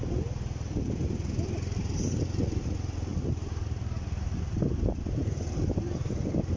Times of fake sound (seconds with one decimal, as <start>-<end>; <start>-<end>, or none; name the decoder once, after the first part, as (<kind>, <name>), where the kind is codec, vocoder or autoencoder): none